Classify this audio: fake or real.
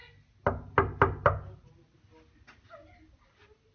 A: real